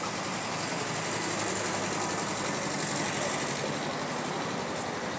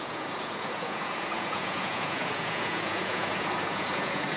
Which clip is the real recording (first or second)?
first